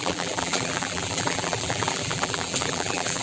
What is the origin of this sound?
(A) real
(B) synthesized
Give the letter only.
B